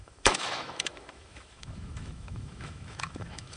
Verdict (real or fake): fake